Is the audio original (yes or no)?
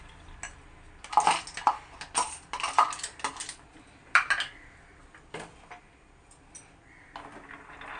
yes